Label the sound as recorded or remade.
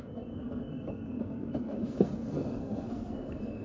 remade